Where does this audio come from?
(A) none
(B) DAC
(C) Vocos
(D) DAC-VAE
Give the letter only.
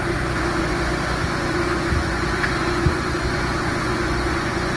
C